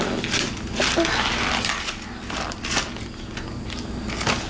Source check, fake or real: real